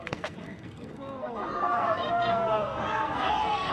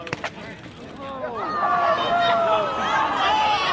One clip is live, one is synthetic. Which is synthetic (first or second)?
first